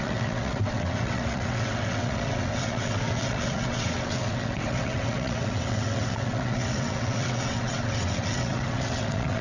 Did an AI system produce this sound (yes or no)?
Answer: yes